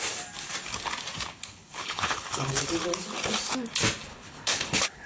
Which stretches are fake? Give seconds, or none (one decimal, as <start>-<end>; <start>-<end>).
1.3-2.6; 4.1-5.1